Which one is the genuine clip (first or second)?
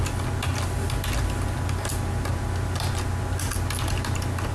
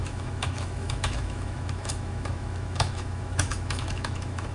first